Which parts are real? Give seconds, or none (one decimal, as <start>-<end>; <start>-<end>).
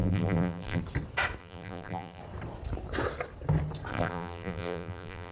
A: 0.8-1.4; 2.2-3.9